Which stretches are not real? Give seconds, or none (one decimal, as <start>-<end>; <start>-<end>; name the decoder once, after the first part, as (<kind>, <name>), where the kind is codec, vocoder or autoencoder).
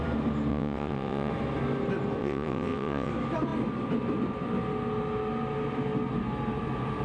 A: 0.5-1.3 (vocoder, WaveNeXt); 2.2-3.1